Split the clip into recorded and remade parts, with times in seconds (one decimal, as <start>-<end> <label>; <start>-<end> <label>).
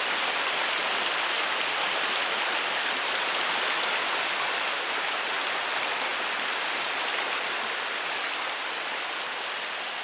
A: 0.0-10.0 recorded